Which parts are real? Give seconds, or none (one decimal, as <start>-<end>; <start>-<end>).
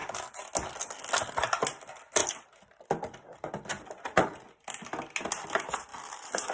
0.0-6.5